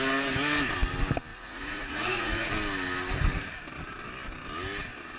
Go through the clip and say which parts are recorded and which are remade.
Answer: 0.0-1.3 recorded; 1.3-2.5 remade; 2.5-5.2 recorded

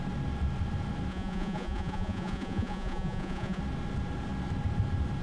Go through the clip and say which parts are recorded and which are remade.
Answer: 0.0-1.1 recorded; 1.1-3.6 remade; 3.6-5.2 recorded

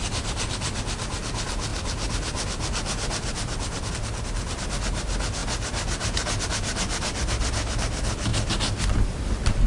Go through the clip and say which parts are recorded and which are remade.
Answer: 0.0-9.7 recorded